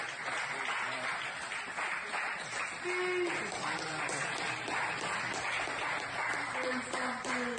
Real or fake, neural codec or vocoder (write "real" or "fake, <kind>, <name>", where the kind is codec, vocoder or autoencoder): real